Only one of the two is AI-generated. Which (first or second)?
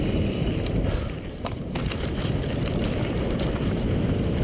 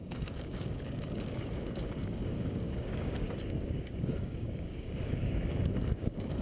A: second